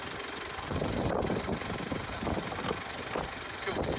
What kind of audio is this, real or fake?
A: real